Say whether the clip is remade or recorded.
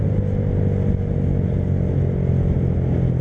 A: recorded